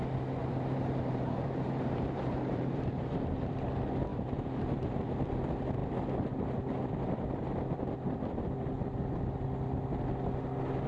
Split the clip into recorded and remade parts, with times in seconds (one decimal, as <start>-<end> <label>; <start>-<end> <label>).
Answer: 0.0-0.4 recorded; 0.4-3.5 remade; 3.5-4.1 recorded; 4.1-5.0 remade; 5.0-10.9 recorded